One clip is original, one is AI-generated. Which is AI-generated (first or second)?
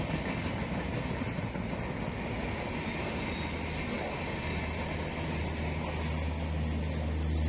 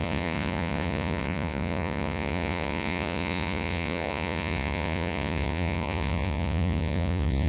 second